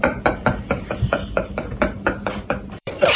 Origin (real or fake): fake